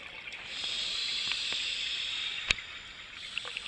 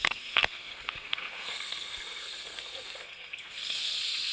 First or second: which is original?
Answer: first